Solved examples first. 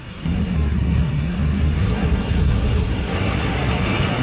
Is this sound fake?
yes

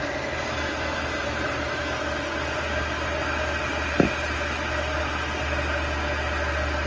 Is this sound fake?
no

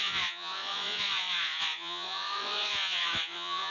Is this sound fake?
yes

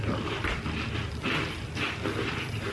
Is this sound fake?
no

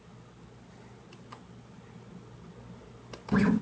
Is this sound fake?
no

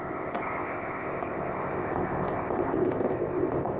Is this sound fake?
yes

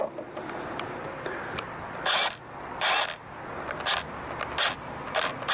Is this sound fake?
no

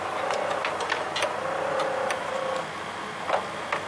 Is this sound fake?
no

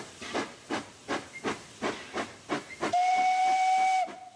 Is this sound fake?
no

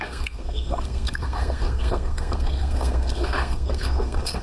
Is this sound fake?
yes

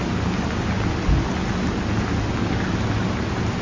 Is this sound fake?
no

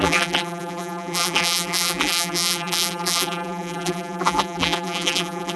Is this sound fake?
yes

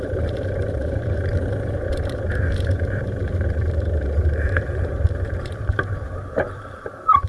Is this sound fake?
yes